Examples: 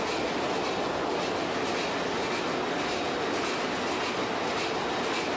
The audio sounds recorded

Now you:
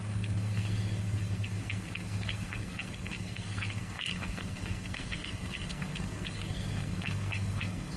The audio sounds remade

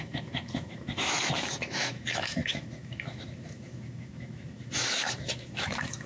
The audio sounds remade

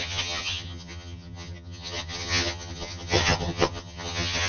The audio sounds remade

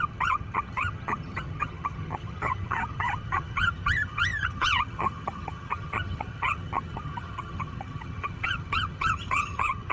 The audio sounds remade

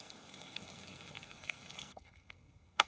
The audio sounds remade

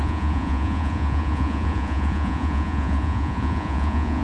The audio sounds remade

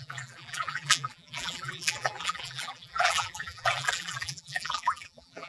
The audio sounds remade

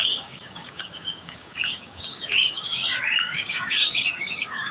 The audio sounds remade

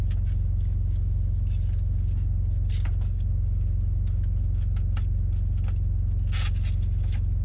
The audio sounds recorded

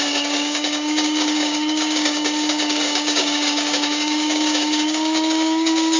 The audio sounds remade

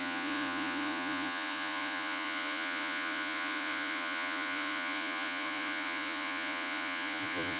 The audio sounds remade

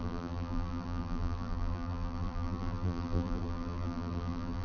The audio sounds remade